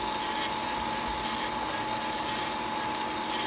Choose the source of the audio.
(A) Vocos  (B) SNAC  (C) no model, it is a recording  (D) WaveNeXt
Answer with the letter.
C